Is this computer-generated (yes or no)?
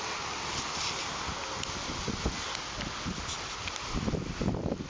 no